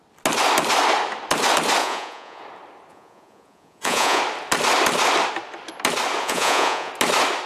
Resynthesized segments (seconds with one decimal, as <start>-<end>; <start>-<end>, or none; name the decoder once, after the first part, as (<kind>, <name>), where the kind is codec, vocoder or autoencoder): 1.8-2.4 (vocoder, Vocos); 2.9-4.2; 6.2-6.9